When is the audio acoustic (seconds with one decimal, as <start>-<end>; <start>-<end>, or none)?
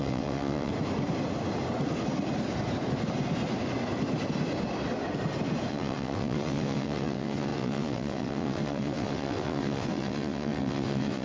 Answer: 0.7-5.7